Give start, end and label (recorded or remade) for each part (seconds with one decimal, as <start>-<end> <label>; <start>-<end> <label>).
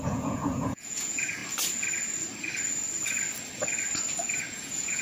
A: 0.0-1.4 remade; 1.4-4.4 recorded; 4.4-5.0 remade